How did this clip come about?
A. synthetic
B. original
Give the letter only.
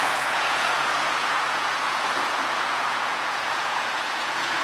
A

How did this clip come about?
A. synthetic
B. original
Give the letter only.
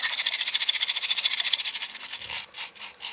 B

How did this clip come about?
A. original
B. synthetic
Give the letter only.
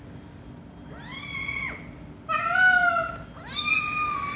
A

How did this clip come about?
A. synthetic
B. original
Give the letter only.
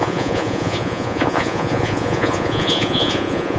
A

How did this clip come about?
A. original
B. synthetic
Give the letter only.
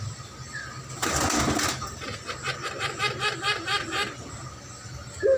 A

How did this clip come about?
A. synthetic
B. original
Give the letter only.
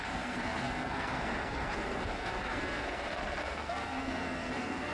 A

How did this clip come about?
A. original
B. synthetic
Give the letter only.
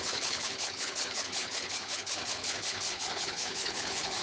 B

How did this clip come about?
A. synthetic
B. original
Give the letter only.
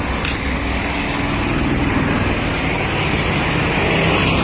B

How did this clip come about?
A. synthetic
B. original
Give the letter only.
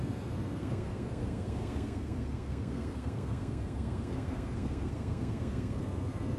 A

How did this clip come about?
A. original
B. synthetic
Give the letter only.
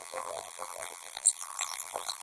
B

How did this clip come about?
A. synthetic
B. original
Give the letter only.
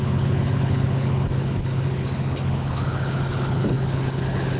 A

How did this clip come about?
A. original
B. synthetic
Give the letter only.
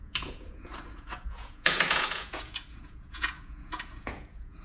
B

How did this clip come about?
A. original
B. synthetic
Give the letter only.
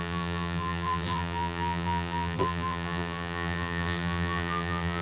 B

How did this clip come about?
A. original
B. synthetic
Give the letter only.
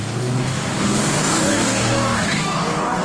B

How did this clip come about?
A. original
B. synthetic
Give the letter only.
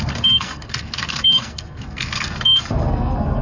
B